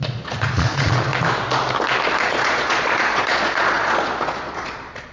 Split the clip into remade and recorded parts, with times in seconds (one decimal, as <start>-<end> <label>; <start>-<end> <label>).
0.0-1.1 remade; 1.1-2.3 recorded; 2.3-5.1 remade